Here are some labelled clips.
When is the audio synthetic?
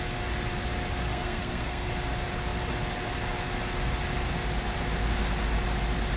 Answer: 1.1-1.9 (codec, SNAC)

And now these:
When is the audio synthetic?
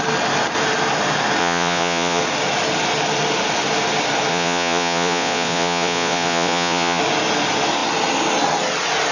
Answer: 1.4-2.2 (vocoder, Vocos); 4.3-7.0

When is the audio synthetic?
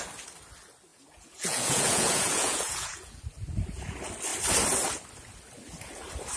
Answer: 0.9-3.2 (vocoder, Vocos)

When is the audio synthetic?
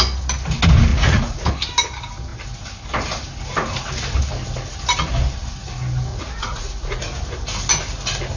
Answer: 0.9-1.5 (vocoder, Vocos); 6.1-7.0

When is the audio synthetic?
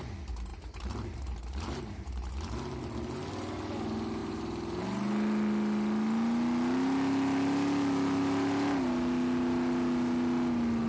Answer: 0.5-2.3 (vocoder, BigVGAN v2); 4.2-4.8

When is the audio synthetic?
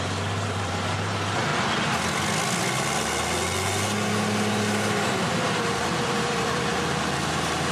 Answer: 0.0-1.5 (vocoder, BigVGAN v2); 5.2-6.7; 7.3-7.7